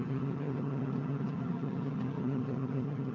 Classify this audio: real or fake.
fake